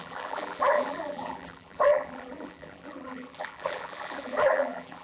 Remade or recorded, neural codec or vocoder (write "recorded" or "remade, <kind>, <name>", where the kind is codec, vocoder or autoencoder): remade, vocoder, BigVGAN v2